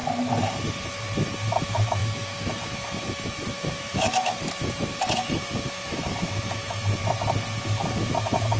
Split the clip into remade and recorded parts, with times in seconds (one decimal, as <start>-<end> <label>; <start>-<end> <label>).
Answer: 0.0-1.6 recorded; 1.6-7.0 remade; 7.0-7.6 recorded; 7.6-8.6 remade